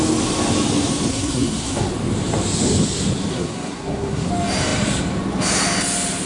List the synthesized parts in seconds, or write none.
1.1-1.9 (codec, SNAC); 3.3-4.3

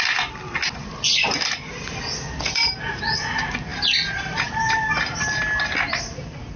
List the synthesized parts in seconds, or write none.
none

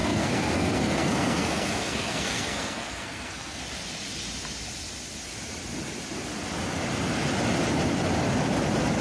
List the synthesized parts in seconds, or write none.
0.0-3.6 (codec, SNAC)

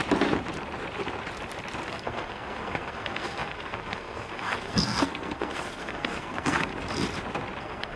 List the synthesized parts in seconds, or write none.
1.9-6.7 (codec, SNAC); 7.6-8.0

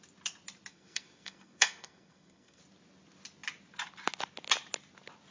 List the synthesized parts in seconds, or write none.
0.7-2.6 (codec, SNAC)

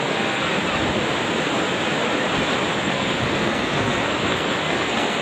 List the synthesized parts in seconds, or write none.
0.0-0.5 (codec, SNAC); 2.8-5.2

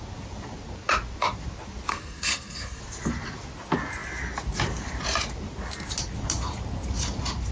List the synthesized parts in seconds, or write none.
1.9-2.8 (codec, SNAC)